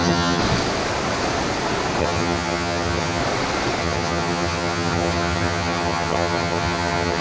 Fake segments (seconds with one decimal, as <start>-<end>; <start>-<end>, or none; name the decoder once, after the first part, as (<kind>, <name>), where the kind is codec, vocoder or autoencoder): 0.0-0.4 (vocoder, HiFi-GAN); 2.0-3.2; 3.8-7.2